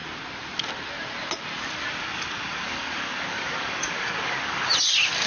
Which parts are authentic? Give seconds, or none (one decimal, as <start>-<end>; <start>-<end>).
0.0-2.0; 4.7-5.3